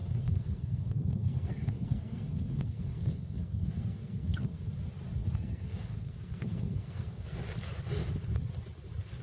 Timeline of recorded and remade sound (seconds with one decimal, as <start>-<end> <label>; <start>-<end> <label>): 0.0-4.7 remade; 4.7-5.2 recorded; 5.2-7.4 remade; 7.4-9.2 recorded